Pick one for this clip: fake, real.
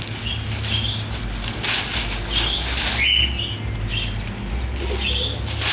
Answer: real